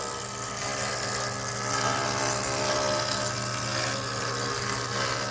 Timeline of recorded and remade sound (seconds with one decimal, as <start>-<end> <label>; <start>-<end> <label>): 0.0-5.3 recorded

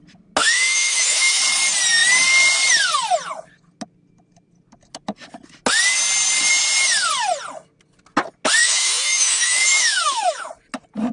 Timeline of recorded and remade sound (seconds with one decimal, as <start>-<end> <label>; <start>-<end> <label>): 0.0-0.4 recorded; 0.4-1.4 remade; 1.4-8.6 recorded; 8.6-10.5 remade; 10.5-11.1 recorded

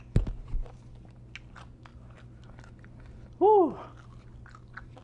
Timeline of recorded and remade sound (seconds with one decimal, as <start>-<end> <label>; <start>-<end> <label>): 0.0-5.0 recorded